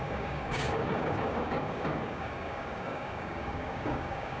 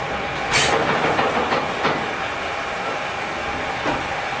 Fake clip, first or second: first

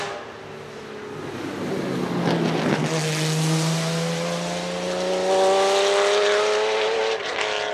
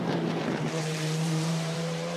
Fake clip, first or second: second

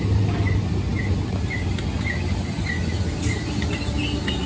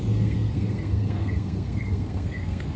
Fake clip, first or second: second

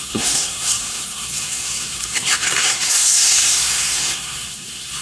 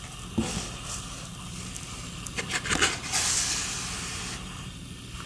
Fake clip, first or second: first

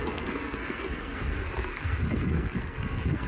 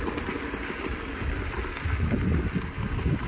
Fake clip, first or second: first